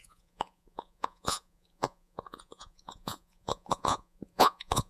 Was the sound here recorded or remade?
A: remade